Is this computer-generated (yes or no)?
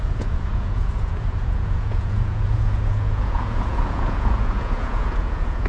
yes